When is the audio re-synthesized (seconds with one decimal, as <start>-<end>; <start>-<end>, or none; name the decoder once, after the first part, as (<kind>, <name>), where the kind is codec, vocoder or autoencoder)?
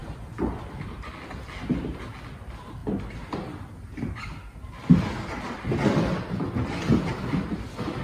none